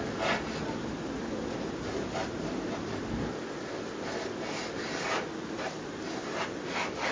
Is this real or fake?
real